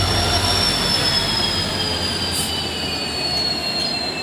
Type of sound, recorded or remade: recorded